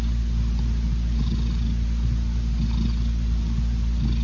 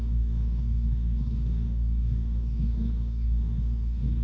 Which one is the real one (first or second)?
first